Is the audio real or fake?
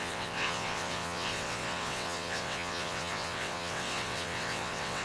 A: fake